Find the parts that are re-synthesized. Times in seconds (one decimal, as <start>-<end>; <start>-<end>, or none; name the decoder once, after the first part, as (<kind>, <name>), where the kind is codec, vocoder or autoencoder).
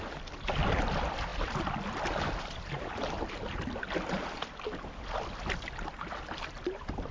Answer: none